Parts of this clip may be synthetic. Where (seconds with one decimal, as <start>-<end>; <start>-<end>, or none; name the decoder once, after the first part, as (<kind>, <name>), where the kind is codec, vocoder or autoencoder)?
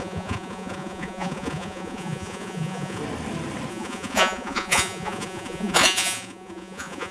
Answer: 0.0-3.0 (vocoder, Vocos); 3.7-7.1